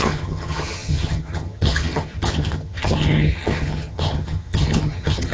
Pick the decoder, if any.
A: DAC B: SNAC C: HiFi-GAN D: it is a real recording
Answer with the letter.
C